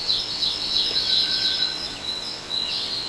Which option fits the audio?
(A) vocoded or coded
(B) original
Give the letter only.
A